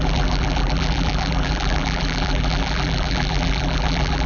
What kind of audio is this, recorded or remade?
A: remade